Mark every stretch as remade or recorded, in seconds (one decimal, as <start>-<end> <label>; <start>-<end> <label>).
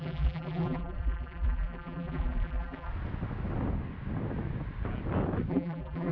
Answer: 0.0-2.9 remade; 2.9-5.5 recorded; 5.5-6.1 remade